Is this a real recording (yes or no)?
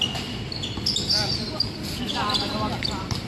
yes